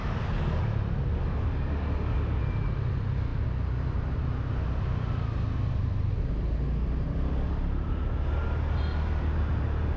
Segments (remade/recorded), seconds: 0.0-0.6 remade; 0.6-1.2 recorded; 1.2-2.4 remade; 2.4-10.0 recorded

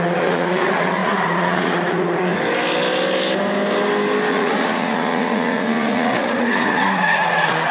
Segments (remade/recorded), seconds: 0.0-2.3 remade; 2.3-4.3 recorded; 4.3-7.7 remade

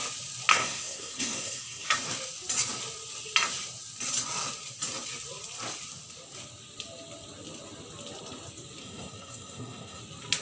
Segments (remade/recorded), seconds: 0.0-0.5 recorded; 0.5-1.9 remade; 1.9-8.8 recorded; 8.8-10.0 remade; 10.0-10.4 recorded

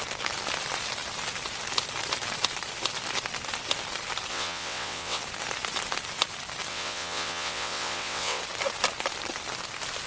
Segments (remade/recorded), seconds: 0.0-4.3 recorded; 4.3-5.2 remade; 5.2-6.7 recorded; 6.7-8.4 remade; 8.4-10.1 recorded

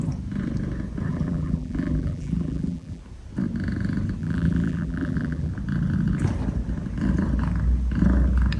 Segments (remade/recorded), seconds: 0.0-1.1 recorded; 1.1-3.0 remade; 3.0-4.2 recorded; 4.2-5.5 remade; 5.5-8.6 recorded